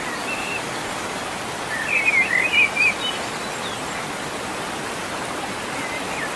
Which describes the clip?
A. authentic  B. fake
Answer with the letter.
A